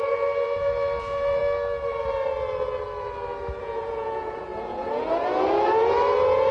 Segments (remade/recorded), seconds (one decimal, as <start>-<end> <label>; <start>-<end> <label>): 0.0-1.4 remade; 1.4-3.6 recorded; 3.6-6.5 remade